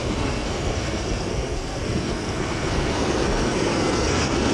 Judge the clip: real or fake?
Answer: fake